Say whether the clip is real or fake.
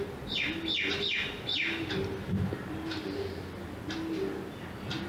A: real